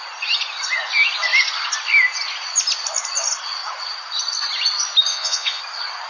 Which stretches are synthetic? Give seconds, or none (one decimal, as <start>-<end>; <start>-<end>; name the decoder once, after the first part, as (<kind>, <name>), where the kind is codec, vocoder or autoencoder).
5.1-5.6 (vocoder, Vocos)